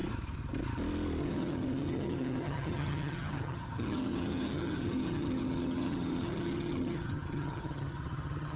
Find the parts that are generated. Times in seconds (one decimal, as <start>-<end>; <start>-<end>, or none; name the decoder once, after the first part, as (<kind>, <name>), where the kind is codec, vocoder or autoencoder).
1.2-8.6 (vocoder, HiFi-GAN)